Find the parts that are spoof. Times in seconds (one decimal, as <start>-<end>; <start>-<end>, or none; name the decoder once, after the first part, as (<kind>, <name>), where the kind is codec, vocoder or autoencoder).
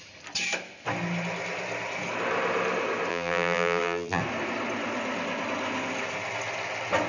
3.1-4.2 (vocoder, BigVGAN v2)